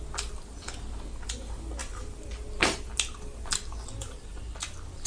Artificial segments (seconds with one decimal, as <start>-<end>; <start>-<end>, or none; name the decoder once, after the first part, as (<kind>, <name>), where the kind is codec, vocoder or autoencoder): none